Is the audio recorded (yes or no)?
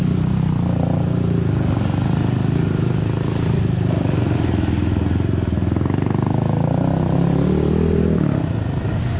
yes